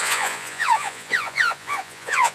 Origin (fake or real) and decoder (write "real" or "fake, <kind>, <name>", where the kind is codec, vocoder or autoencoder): fake, vocoder, Vocos